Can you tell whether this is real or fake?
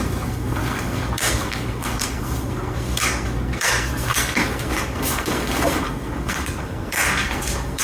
fake